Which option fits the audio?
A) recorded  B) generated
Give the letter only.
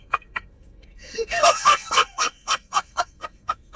B